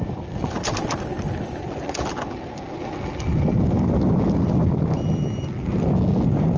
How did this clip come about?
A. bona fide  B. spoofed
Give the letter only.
A